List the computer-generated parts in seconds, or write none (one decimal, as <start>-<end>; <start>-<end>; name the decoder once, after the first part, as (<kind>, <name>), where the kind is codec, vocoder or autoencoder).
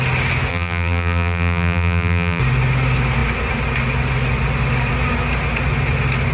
0.5-2.4 (vocoder, BigVGAN v2)